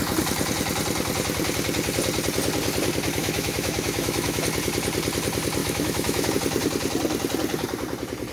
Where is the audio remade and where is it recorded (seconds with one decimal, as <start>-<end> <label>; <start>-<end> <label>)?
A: 0.0-3.2 recorded; 3.2-4.4 remade; 4.4-5.6 recorded; 5.6-6.3 remade; 6.3-8.3 recorded